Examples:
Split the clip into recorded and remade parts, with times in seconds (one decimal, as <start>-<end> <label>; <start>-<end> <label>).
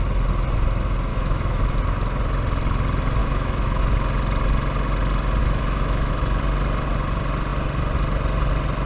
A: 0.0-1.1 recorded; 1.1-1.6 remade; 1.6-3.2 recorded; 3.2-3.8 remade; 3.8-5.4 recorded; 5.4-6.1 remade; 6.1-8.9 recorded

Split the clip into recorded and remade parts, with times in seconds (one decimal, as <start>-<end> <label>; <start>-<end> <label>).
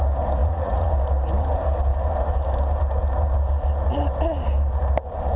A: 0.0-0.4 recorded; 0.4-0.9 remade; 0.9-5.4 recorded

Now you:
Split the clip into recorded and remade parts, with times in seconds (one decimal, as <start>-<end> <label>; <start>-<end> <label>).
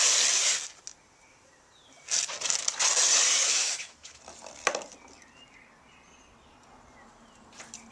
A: 0.0-3.4 recorded; 3.4-4.2 remade; 4.2-7.9 recorded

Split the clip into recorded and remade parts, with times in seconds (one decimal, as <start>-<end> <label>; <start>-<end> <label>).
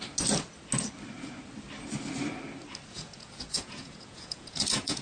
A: 0.0-2.9 recorded; 2.9-5.0 remade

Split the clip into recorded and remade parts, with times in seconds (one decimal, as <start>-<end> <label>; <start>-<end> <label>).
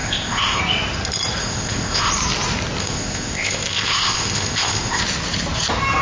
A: 0.0-0.6 remade; 0.6-1.4 recorded; 1.4-2.1 remade; 2.1-2.8 recorded; 2.8-5.0 remade; 5.0-6.0 recorded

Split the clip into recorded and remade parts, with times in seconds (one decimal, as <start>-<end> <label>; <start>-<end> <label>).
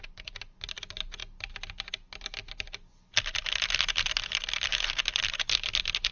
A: 0.0-6.1 recorded